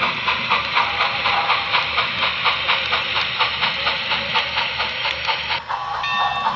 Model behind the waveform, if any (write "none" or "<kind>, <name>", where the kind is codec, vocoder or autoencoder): none